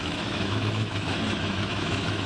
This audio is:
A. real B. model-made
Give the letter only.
B